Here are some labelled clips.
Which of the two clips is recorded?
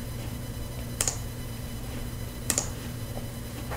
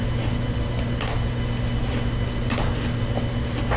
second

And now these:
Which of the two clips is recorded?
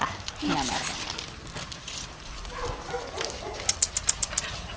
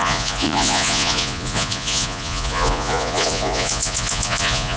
first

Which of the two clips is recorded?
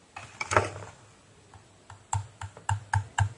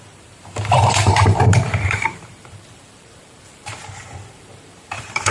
first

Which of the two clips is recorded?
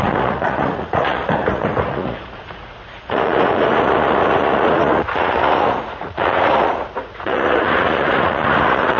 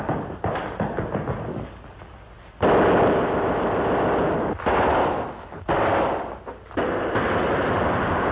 second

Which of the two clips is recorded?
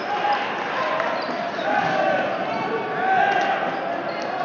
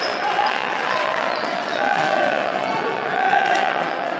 first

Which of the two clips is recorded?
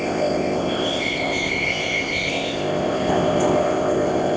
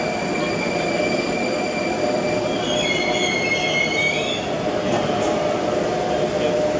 second